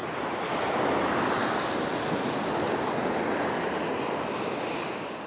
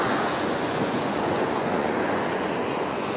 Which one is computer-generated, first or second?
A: second